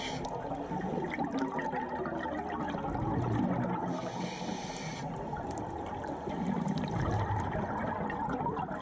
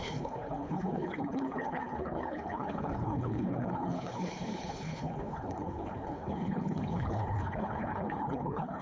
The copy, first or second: second